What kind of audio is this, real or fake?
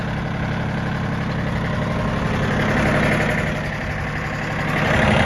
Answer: real